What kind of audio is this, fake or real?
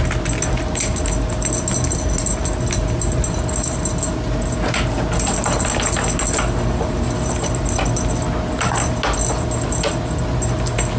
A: real